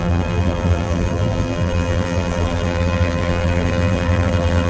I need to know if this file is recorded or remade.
remade